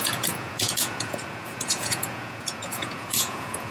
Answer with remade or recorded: remade